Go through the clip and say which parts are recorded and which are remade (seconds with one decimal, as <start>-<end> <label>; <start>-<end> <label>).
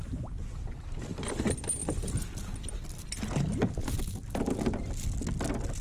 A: 0.0-5.8 recorded